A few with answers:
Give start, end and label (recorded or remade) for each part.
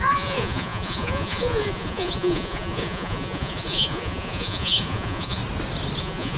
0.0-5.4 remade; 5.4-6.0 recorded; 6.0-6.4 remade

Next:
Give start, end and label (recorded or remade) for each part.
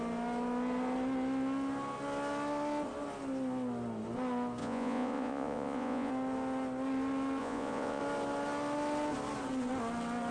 0.0-4.6 recorded; 4.6-6.1 remade; 6.1-7.4 recorded; 7.4-8.0 remade; 8.0-10.3 recorded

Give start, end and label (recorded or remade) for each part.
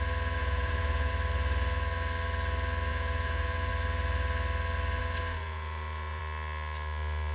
0.0-0.4 recorded; 0.4-1.1 remade; 1.1-2.9 recorded; 2.9-3.7 remade; 3.7-5.0 recorded; 5.0-6.2 remade; 6.2-7.3 recorded